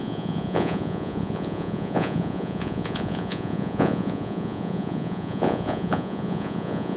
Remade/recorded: remade